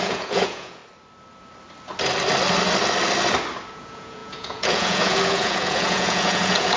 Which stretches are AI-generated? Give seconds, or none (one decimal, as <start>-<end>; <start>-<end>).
0.0-0.8; 3.7-6.8